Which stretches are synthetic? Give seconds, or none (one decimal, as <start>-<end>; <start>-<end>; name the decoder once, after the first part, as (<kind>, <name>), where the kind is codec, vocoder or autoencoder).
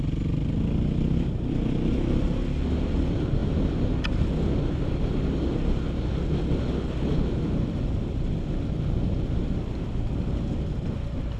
none